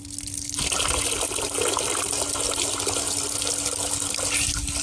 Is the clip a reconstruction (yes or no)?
no